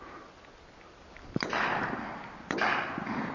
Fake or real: real